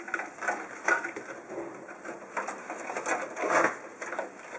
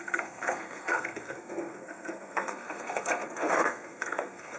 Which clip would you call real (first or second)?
first